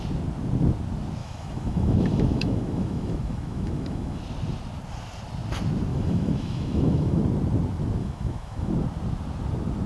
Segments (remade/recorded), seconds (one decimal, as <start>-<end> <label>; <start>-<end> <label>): 0.0-1.2 recorded; 1.2-4.2 remade; 4.2-5.9 recorded; 5.9-7.2 remade; 7.2-8.0 recorded; 8.0-8.7 remade; 8.7-9.9 recorded